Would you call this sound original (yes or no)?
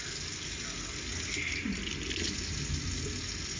yes